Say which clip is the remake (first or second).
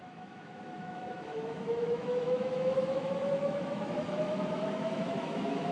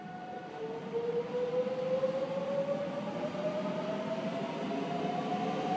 first